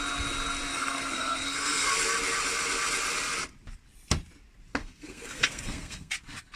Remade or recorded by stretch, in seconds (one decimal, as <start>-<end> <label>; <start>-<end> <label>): 0.0-0.7 recorded; 0.7-1.9 remade; 1.9-4.8 recorded; 4.8-6.1 remade; 6.1-6.6 recorded